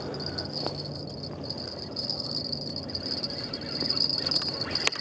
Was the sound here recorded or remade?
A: recorded